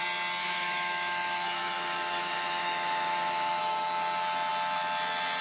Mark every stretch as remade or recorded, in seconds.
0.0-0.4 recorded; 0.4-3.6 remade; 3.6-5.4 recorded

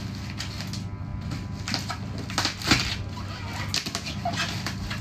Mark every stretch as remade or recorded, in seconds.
0.0-5.0 recorded

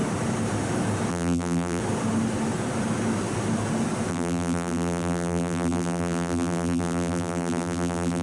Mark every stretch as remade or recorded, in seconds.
0.0-1.1 recorded; 1.1-1.8 remade; 1.8-4.1 recorded; 4.1-8.2 remade

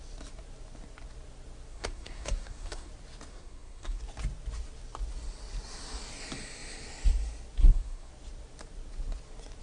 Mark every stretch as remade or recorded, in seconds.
0.0-1.7 recorded; 1.7-2.9 remade; 2.9-3.3 recorded; 3.3-4.0 remade; 4.0-7.6 recorded; 7.6-8.1 remade; 8.1-9.6 recorded